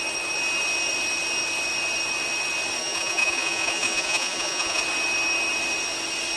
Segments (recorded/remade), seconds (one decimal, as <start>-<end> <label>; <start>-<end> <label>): 0.0-2.8 recorded; 2.8-4.8 remade; 4.8-6.4 recorded